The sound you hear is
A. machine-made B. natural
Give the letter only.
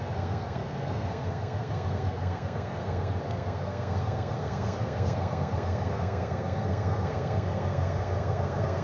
A